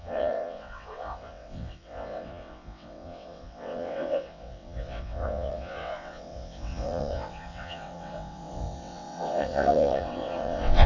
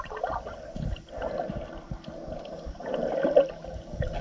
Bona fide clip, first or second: second